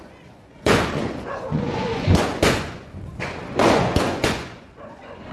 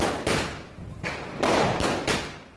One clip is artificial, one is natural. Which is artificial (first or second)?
first